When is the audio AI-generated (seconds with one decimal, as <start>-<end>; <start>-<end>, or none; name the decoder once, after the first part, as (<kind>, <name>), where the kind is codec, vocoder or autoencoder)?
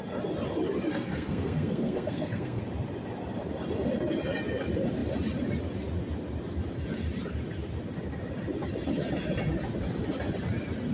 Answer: 0.9-2.6 (codec, SNAC)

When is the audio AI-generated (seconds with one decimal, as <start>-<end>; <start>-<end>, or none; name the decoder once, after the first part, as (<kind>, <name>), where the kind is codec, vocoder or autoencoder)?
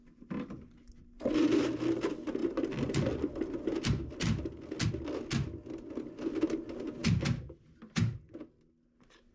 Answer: none